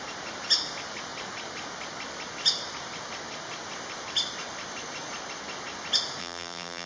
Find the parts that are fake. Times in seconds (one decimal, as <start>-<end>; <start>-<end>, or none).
6.2-6.9